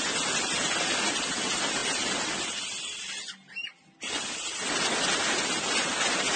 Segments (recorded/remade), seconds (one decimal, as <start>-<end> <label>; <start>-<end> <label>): 0.0-6.4 recorded